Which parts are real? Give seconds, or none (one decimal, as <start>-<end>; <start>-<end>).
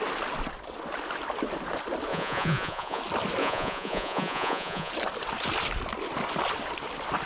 0.0-2.1; 3.0-3.4; 4.9-7.3